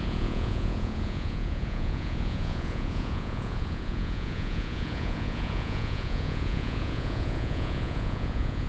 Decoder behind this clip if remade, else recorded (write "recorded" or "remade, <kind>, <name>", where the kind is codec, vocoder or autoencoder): remade, vocoder, Vocos